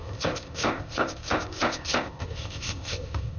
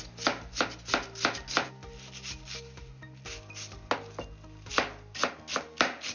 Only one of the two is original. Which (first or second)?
second